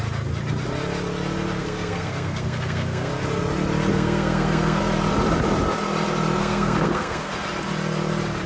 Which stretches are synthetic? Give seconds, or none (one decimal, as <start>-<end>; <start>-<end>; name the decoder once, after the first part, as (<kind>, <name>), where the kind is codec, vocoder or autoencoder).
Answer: 1.6-3.1 (codec, SNAC); 3.9-4.8; 6.4-7.3